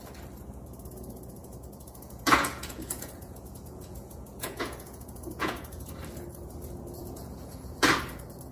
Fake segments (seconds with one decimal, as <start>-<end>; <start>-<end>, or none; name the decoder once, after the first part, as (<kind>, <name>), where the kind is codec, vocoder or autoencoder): 1.4-5.9 (vocoder, Vocos); 7.0-8.0